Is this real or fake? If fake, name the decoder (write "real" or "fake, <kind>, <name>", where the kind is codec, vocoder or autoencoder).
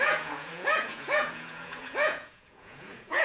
fake, vocoder, Vocos